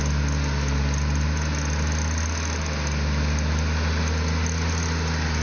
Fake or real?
real